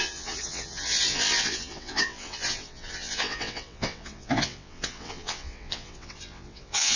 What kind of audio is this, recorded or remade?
remade